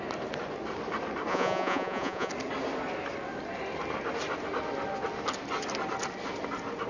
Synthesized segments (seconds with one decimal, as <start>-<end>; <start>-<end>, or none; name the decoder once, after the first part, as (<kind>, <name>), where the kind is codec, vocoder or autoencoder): 1.3-2.3 (vocoder, Vocos)